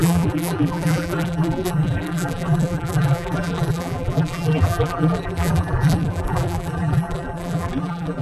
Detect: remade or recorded remade